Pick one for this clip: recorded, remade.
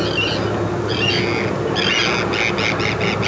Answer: recorded